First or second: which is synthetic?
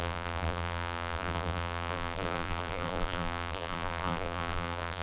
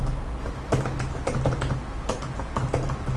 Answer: first